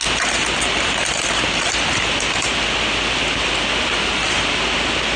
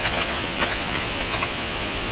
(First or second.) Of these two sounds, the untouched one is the first